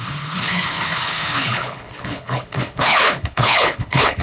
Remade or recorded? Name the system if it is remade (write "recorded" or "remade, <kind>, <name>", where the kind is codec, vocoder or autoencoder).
remade, codec, HILCodec